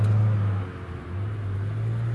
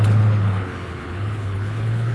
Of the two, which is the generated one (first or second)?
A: second